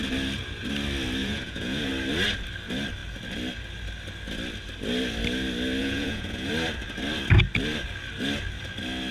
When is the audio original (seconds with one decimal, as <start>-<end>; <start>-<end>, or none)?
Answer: 0.0-1.2; 1.9-5.8; 6.5-9.1